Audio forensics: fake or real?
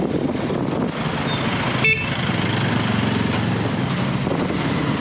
real